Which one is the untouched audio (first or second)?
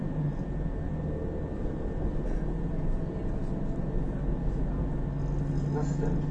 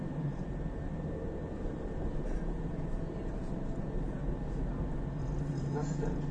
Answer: first